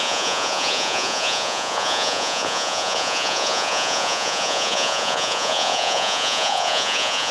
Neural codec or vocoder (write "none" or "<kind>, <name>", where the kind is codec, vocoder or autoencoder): vocoder, Vocos